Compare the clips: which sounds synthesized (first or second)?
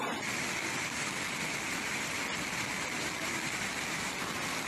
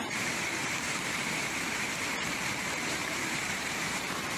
second